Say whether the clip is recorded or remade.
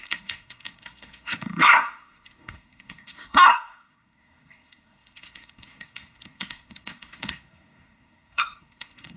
remade